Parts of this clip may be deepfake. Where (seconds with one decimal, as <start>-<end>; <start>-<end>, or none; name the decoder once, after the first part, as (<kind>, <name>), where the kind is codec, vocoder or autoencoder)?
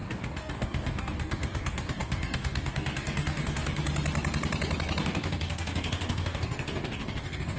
0.0-3.8 (codec, DAC); 5.0-7.6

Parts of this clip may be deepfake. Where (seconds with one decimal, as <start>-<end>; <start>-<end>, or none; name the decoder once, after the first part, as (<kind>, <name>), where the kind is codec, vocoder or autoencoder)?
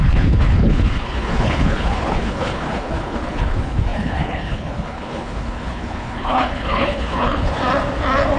0.0-7.6 (codec, HILCodec)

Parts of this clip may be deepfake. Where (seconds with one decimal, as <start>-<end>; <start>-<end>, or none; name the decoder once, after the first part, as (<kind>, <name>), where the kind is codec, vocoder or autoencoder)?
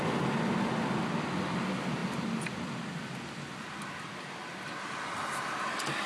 none